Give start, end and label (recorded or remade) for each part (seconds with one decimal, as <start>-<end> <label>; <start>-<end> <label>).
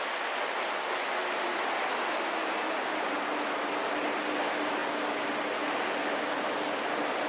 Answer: 0.0-7.3 recorded